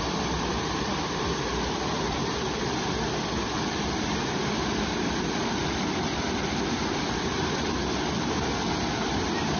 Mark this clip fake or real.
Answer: fake